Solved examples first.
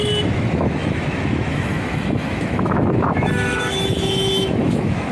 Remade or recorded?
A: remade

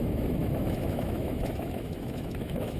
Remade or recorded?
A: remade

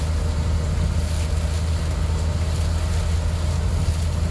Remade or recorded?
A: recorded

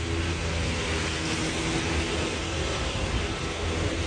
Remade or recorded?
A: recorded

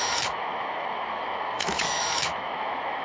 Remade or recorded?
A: remade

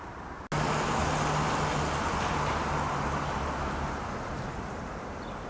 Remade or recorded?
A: recorded